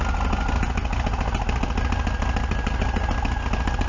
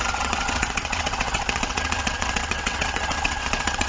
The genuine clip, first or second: first